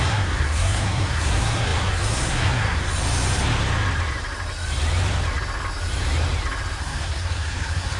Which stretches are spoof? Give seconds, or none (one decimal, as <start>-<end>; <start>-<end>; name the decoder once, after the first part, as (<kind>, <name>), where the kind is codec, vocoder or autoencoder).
0.0-2.9 (codec, SNAC); 6.8-8.0